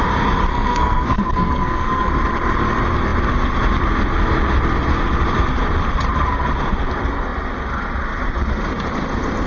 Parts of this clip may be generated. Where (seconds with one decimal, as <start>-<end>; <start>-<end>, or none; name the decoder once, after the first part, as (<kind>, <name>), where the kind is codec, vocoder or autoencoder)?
0.5-2.1 (codec, SNAC)